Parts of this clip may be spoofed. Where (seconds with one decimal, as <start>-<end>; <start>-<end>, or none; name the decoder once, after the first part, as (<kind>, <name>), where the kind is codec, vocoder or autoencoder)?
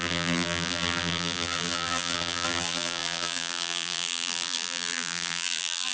0.0-5.9 (vocoder, BigVGAN v2)